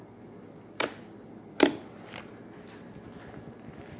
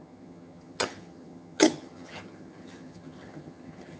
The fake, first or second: second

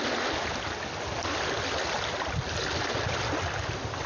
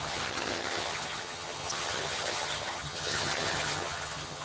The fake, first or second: second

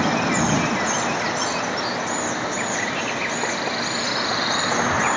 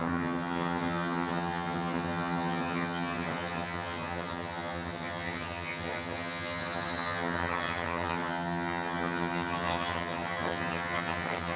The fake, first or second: second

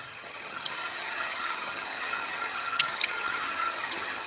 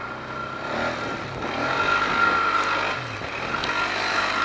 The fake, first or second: first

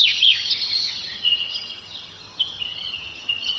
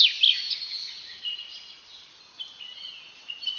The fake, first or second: first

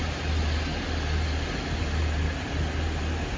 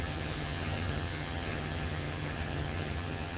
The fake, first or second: second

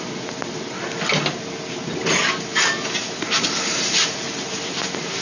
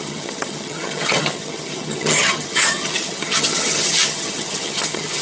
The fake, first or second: second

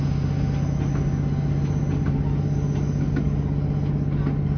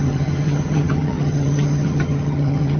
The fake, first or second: second